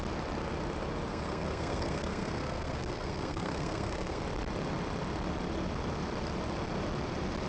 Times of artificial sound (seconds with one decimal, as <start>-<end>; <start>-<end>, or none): 1.1-4.2